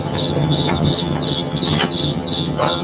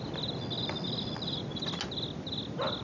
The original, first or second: second